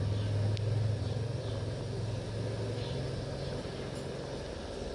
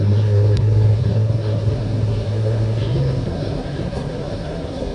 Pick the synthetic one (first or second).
second